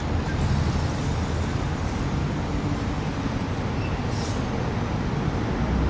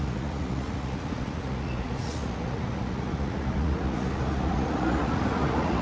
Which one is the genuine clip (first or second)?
first